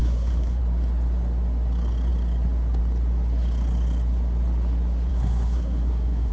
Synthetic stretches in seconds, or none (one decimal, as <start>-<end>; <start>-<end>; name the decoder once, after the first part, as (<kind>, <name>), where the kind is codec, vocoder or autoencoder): 0.0-0.6 (codec, SNAC); 5.1-6.3